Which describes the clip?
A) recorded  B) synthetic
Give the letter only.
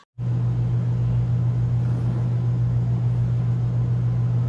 A